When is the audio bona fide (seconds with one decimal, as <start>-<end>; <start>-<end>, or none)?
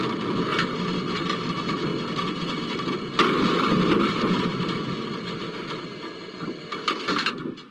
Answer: 0.5-1.1; 1.9-3.7